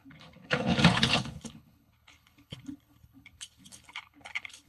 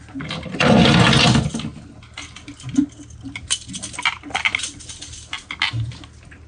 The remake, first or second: first